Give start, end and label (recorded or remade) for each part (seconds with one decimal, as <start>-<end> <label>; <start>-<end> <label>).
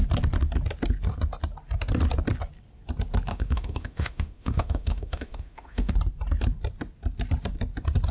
0.0-3.3 recorded; 3.3-5.9 remade; 5.9-8.1 recorded